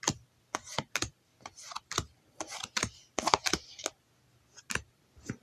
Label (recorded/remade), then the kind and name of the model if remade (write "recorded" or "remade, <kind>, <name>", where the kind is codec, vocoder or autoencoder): recorded